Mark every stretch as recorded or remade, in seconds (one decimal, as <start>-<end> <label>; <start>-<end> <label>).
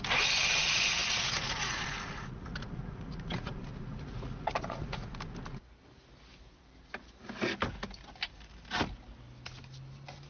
0.0-0.6 recorded; 0.6-5.1 remade; 5.1-10.3 recorded